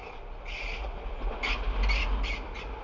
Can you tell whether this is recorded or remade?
recorded